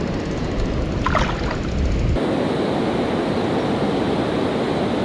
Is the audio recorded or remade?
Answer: recorded